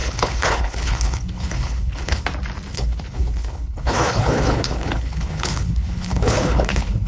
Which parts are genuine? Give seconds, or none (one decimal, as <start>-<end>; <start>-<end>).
2.2-2.7